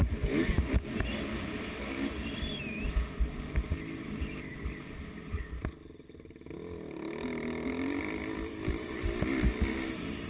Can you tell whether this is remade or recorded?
recorded